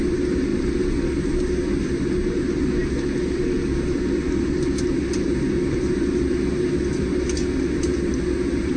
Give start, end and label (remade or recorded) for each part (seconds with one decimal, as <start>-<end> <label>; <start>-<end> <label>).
0.0-8.8 recorded